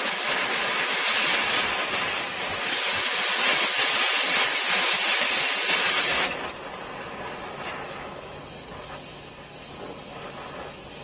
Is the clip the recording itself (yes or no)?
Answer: yes